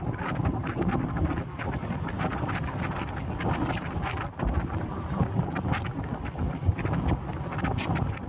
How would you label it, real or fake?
real